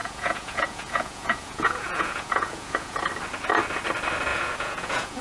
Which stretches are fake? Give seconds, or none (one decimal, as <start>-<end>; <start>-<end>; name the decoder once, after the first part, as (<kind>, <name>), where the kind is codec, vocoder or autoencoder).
0.0-3.1 (vocoder, Vocos); 4.3-5.2